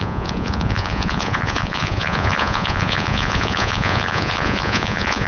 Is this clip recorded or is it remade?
remade